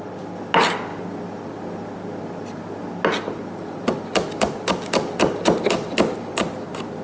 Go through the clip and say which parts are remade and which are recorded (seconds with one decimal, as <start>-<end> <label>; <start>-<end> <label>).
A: 0.0-7.0 recorded